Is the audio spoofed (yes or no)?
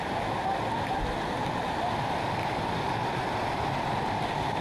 no